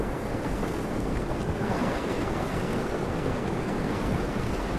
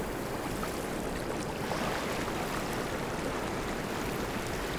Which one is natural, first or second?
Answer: second